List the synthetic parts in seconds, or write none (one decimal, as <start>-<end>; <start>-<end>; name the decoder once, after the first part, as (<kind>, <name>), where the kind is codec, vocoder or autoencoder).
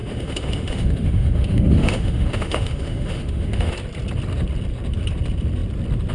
0.0-3.7 (autoencoder, DAC-VAE)